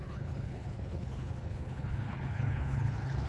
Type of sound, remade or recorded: remade